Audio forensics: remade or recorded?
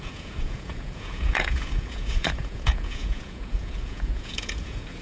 remade